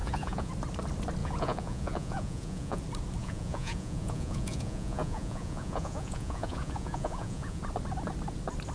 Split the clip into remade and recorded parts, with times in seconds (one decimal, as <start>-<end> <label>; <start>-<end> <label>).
0.0-0.5 remade; 0.5-1.2 recorded; 1.2-2.8 remade; 2.8-3.2 recorded; 3.2-7.6 remade; 7.6-8.7 recorded